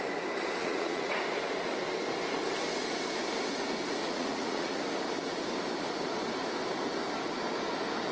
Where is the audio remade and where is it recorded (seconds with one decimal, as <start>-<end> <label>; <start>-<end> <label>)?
0.0-0.6 recorded; 0.6-1.2 remade; 1.2-4.0 recorded; 4.0-4.8 remade; 4.8-8.1 recorded